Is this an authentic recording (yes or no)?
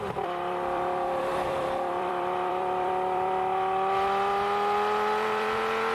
no